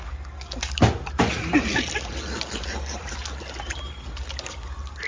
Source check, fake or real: real